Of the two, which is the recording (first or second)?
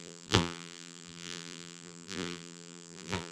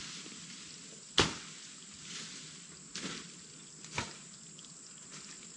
second